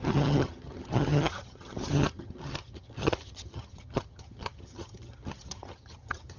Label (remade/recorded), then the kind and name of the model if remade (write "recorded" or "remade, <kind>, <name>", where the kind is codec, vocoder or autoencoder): remade, vocoder, HiFi-GAN